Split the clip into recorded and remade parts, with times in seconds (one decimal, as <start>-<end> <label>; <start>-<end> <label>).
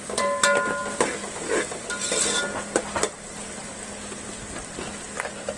0.0-5.6 recorded